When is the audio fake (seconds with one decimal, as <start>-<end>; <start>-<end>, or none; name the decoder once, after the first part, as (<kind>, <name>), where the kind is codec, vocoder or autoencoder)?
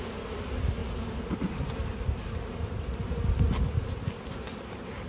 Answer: none